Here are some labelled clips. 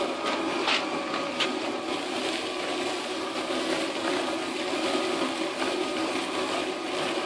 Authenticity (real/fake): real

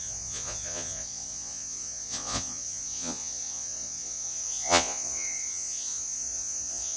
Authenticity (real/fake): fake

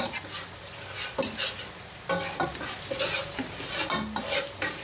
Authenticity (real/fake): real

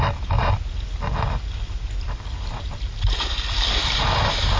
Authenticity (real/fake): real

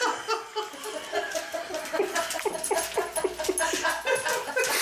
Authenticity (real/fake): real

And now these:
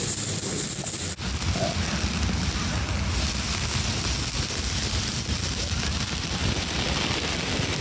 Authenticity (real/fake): real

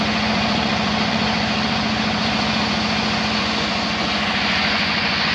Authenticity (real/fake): fake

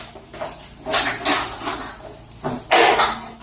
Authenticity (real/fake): real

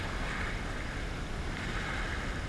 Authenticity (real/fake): real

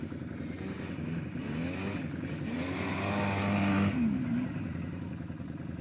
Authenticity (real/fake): real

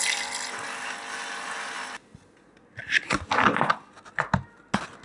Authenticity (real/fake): real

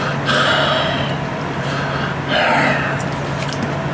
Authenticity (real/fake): real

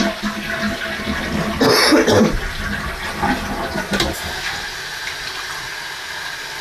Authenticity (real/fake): real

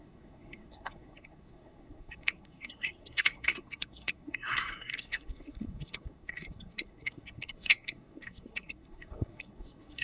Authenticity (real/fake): fake